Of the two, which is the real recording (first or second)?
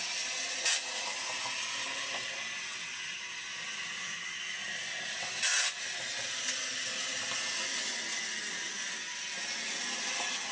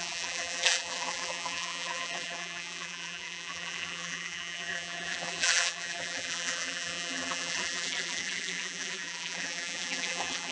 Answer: first